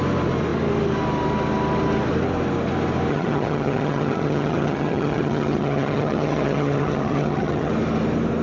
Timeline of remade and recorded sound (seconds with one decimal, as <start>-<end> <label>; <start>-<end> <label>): 0.0-3.1 recorded; 3.1-7.7 remade; 7.7-8.4 recorded